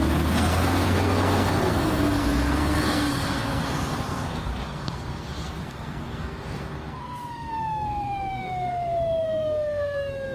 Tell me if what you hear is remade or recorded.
remade